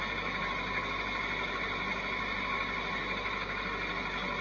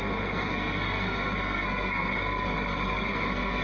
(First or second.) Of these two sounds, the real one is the first